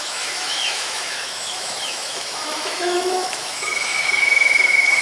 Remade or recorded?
remade